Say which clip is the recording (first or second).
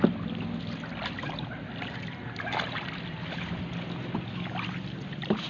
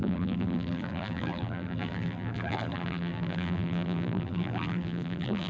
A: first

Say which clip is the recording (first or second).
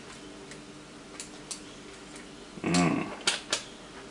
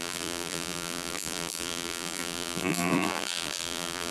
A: first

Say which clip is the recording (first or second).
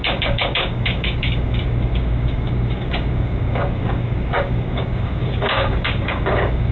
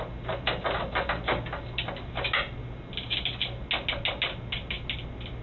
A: second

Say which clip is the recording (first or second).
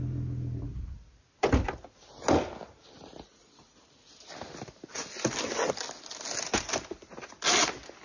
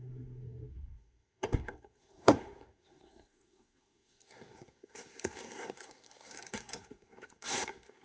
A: first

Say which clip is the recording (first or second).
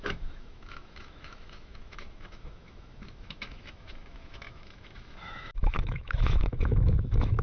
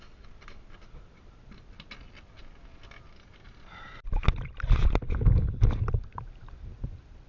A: second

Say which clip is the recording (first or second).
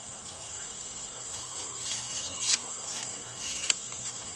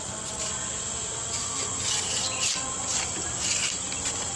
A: second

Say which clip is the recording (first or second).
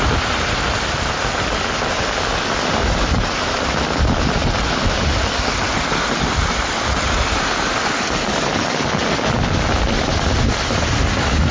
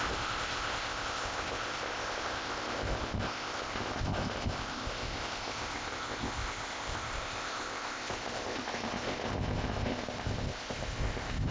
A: first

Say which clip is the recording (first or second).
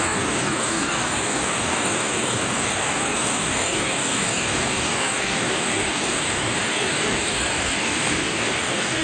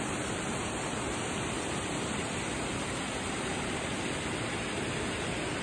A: second